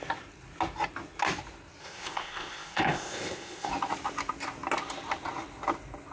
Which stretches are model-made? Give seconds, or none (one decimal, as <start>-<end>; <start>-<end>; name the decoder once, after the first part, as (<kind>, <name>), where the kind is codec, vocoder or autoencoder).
1.8-3.7 (codec, ZipCodec)